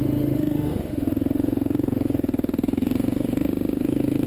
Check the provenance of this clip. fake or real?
fake